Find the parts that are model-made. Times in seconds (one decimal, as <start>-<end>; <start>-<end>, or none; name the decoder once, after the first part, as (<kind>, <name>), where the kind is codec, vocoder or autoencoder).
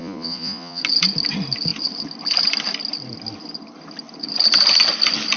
0.0-0.8 (vocoder, Vocos)